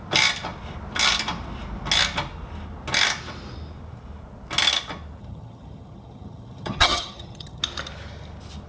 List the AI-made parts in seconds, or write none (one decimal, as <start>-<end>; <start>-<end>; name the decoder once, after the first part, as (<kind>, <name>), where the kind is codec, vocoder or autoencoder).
5.2-7.6 (vocoder, HiFi-GAN)